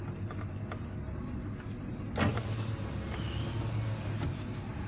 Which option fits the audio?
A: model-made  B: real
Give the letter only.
B